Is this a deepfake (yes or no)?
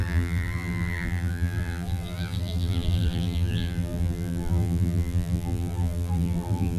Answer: yes